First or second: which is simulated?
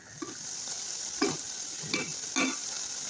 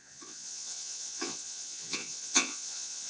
second